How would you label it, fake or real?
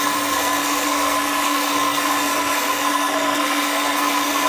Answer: fake